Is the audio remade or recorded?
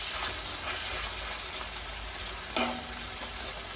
recorded